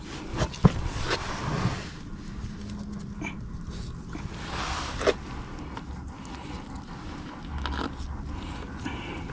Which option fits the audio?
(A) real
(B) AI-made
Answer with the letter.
A